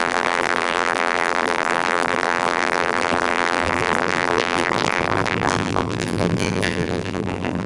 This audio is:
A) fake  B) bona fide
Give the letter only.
A